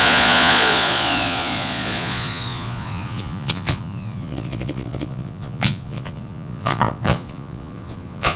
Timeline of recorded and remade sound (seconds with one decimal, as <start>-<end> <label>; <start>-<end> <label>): 0.0-8.4 remade